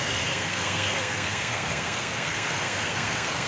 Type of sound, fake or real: fake